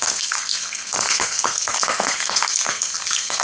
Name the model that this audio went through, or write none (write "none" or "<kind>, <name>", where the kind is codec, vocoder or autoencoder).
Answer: codec, SNAC